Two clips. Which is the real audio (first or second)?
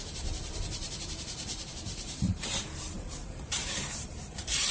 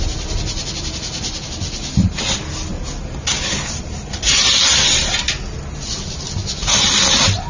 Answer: second